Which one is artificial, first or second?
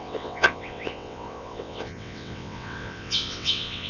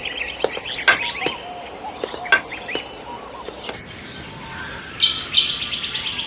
first